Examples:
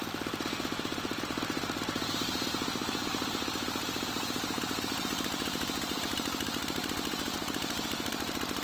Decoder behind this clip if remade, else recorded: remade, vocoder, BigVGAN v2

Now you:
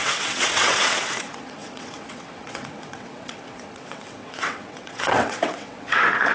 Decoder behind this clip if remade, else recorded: remade, vocoder, WaveNeXt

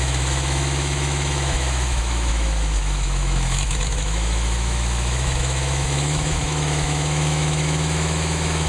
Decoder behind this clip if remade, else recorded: remade, autoencoder, DAC-VAE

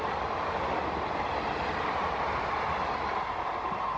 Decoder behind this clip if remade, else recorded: recorded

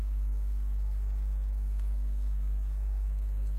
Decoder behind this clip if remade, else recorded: remade, codec, SNAC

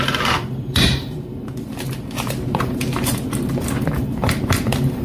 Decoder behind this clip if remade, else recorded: remade, vocoder, BigVGAN v2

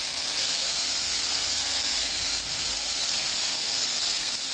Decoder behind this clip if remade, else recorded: remade, codec, SNAC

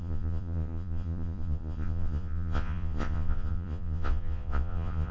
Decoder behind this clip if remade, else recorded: remade, vocoder, Vocos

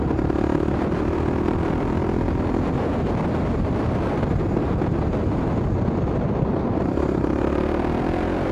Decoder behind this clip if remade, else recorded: recorded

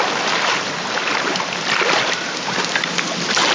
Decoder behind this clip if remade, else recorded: recorded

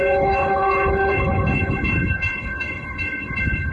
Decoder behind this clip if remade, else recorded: remade, codec, HILCodec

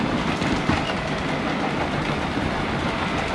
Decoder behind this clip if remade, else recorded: recorded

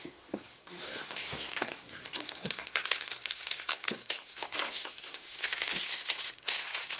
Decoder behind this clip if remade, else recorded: remade, codec, SNAC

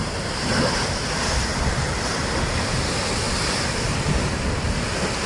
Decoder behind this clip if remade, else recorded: recorded